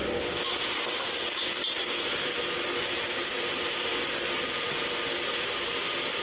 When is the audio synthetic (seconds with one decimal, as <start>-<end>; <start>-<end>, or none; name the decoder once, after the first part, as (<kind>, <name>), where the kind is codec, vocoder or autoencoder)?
none